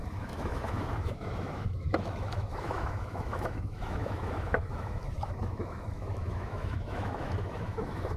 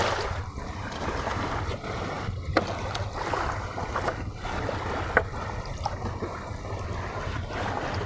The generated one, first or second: first